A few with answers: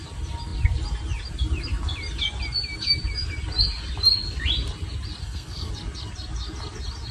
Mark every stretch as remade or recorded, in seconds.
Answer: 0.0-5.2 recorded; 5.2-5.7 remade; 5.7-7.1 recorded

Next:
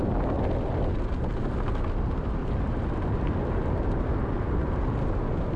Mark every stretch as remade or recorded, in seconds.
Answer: 0.0-1.5 remade; 1.5-2.4 recorded; 2.4-4.8 remade; 4.8-5.6 recorded

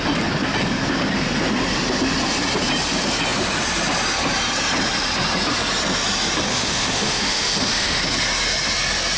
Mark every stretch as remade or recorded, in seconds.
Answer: 0.0-6.5 recorded; 6.5-8.0 remade; 8.0-9.2 recorded

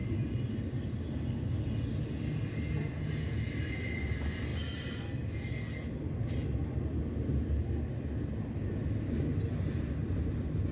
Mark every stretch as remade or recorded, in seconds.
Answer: 0.0-10.7 recorded

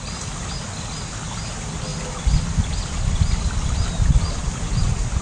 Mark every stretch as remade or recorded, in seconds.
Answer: 0.0-5.2 recorded